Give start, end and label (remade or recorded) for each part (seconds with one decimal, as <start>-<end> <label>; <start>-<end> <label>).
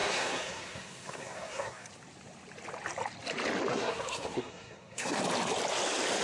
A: 0.0-1.9 remade; 1.9-3.7 recorded; 3.7-5.2 remade; 5.2-6.2 recorded